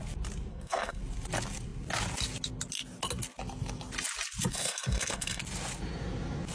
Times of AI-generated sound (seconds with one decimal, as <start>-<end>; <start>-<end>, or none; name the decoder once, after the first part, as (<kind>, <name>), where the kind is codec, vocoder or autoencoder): 0.5-1.0 (codec, SNAC); 4.5-5.4